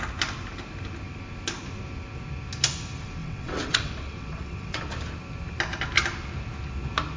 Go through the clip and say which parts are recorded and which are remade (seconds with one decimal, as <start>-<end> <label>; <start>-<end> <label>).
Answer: 0.0-3.2 recorded; 3.2-4.8 remade; 4.8-7.2 recorded